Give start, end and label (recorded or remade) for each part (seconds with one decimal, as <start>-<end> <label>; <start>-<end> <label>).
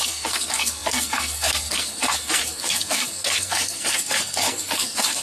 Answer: 0.0-5.2 remade